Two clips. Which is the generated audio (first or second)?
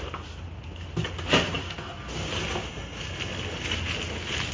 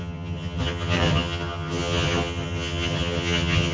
second